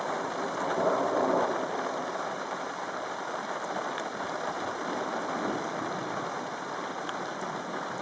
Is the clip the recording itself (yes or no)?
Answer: yes